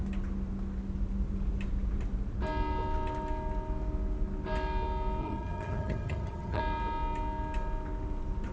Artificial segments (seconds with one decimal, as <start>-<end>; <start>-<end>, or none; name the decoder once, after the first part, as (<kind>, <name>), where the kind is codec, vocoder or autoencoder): 5.2-6.6 (vocoder, HiFi-GAN)